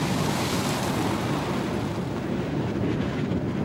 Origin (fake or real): real